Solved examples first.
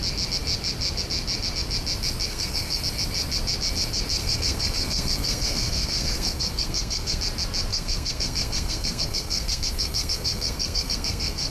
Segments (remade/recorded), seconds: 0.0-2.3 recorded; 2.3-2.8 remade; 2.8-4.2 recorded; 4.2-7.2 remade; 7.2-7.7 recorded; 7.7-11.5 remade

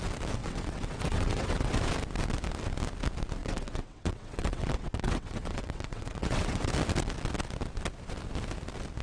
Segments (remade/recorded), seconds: 0.0-0.4 recorded; 0.4-1.7 remade; 1.7-3.4 recorded; 3.4-6.7 remade; 6.7-9.0 recorded